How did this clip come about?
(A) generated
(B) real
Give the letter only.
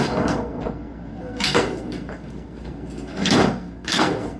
A